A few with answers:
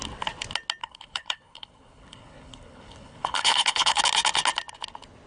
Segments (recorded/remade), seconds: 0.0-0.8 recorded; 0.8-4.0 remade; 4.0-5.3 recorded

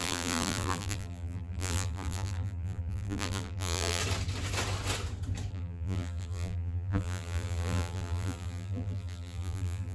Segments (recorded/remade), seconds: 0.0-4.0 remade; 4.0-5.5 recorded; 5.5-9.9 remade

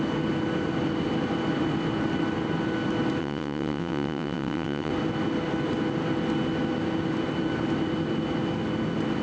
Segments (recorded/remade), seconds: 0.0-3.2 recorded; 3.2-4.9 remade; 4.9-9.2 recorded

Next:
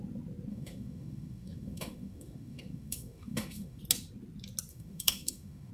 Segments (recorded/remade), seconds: 0.0-0.5 recorded; 0.5-3.8 remade; 3.8-4.7 recorded; 4.7-5.7 remade

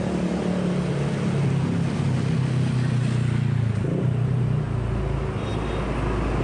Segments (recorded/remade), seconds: 0.0-6.4 recorded

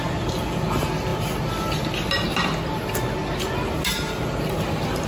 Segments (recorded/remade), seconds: 0.0-5.1 recorded

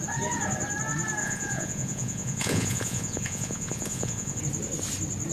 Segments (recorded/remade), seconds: 0.0-1.2 recorded; 1.2-4.4 remade; 4.4-5.3 recorded